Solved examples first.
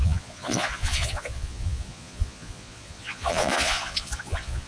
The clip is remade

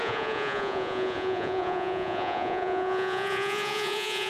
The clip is remade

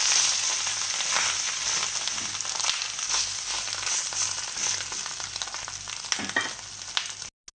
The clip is recorded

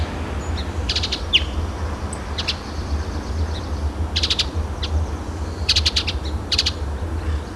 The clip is recorded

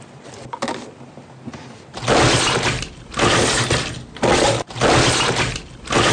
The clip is recorded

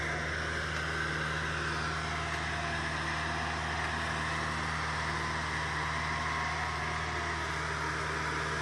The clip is recorded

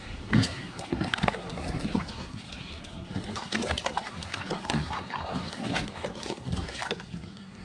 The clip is remade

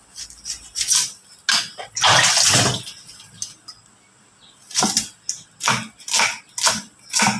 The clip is recorded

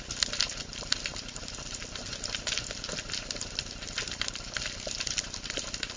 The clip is recorded